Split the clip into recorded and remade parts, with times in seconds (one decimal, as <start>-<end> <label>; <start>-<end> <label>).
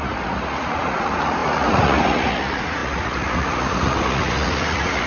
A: 0.0-5.1 remade